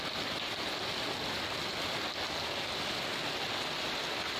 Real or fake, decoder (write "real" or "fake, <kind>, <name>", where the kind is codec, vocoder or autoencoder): real